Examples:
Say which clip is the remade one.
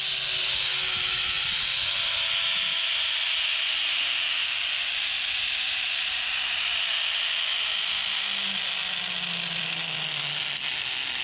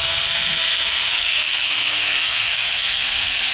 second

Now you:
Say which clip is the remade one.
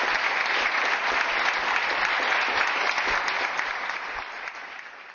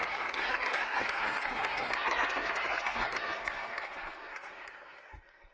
second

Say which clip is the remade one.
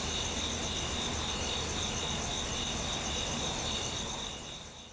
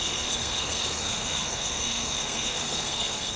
second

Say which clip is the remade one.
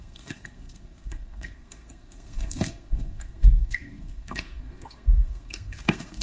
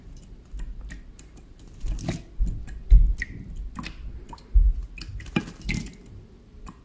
first